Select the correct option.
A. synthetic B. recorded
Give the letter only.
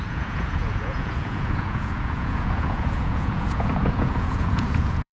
A